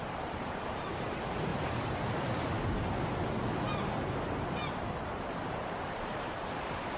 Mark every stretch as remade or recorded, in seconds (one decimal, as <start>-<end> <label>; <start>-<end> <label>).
0.0-1.5 remade; 1.5-3.6 recorded; 3.6-7.0 remade